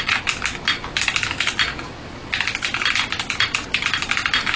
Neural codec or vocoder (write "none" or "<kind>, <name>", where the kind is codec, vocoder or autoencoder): none